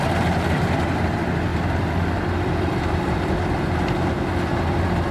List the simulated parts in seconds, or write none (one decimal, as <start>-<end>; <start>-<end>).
1.5-3.4